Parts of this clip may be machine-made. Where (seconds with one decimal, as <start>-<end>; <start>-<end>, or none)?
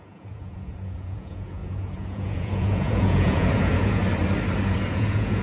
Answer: 0.0-4.0; 4.9-5.4